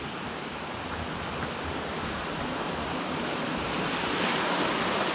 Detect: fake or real real